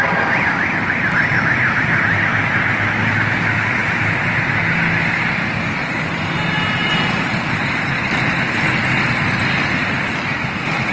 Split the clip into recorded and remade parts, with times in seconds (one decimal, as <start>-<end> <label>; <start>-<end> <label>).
0.0-3.8 recorded; 3.8-4.6 remade; 4.6-5.8 recorded; 5.8-8.7 remade; 8.7-9.4 recorded; 9.4-10.9 remade